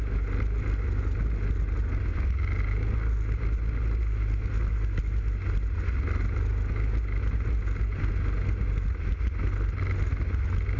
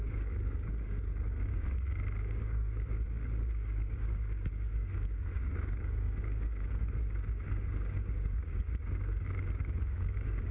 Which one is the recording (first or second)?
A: first